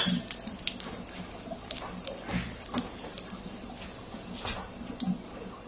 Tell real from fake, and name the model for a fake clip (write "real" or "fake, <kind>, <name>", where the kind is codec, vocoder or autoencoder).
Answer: real